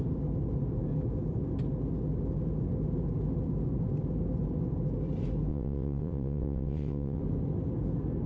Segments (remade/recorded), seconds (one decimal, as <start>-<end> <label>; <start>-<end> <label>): 0.0-5.5 recorded; 5.5-7.2 remade; 7.2-8.3 recorded